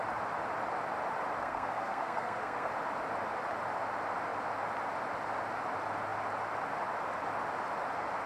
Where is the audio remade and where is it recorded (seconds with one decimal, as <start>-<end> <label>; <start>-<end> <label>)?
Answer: 0.0-1.4 recorded; 1.4-2.7 remade; 2.7-8.3 recorded